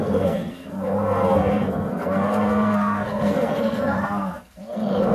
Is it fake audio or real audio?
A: fake